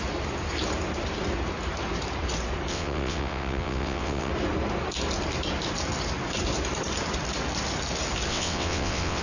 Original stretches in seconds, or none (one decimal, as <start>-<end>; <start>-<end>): 0.0-2.7; 4.3-8.3